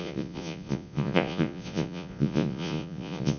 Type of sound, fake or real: fake